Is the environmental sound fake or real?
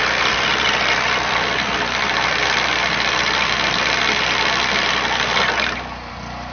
real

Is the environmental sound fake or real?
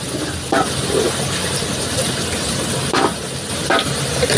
real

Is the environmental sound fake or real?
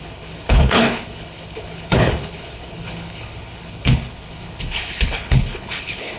fake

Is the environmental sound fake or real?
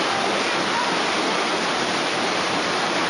real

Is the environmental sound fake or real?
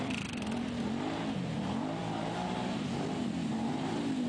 fake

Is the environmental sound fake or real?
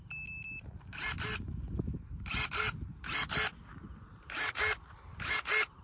real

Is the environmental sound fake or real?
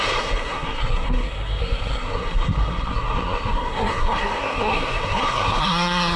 fake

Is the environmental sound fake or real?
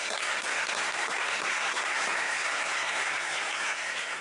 fake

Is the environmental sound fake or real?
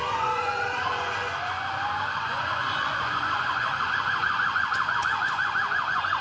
fake